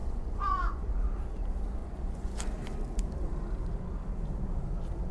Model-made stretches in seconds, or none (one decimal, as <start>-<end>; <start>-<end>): 0.0-0.8; 1.8-2.3